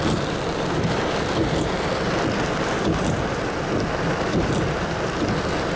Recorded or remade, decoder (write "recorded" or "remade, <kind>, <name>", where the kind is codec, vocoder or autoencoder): remade, vocoder, BigVGAN v2